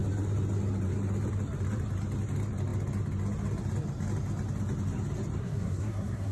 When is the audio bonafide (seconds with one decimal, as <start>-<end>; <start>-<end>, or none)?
0.0-5.4